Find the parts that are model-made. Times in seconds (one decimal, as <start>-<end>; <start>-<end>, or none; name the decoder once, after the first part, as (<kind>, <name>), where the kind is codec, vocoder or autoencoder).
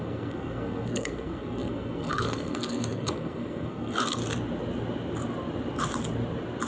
0.0-4.2 (codec, SNAC)